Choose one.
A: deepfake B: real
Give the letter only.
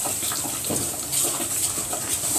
B